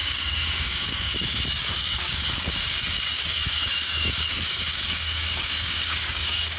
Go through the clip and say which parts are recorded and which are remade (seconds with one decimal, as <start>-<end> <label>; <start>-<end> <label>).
0.0-6.6 remade